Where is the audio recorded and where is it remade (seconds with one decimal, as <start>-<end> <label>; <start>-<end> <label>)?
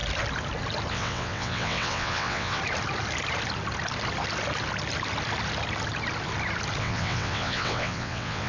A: 0.0-0.9 recorded; 0.9-2.6 remade; 2.6-6.8 recorded; 6.8-8.5 remade